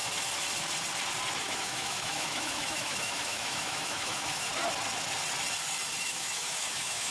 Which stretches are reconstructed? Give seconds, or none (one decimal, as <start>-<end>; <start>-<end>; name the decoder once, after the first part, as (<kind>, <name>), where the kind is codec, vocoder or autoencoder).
1.4-4.5 (autoencoder, DAC-VAE); 6.0-7.1